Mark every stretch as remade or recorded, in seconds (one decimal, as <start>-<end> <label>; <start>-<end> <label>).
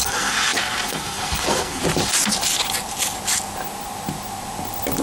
0.0-1.8 remade; 1.8-5.0 recorded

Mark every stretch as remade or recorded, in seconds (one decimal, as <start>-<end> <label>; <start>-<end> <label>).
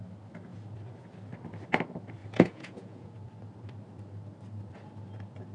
0.0-2.2 recorded; 2.2-3.1 remade; 3.1-5.5 recorded